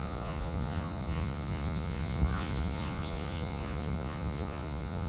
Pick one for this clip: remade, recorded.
remade